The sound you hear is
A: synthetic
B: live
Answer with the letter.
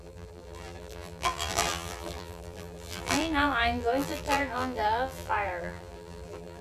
A